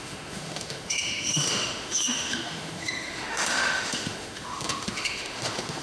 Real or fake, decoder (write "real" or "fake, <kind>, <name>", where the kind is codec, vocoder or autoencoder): fake, autoencoder, DAC-VAE